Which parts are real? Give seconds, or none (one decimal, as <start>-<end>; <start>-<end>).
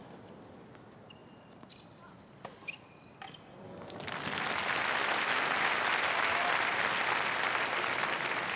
0.0-8.6